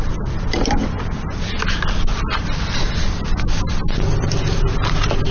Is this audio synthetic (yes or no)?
no